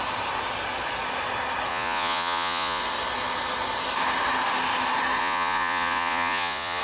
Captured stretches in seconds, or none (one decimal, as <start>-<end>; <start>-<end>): 0.0-1.7; 2.8-5.2